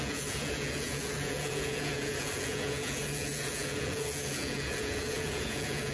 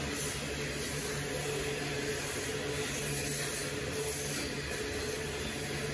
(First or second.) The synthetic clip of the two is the first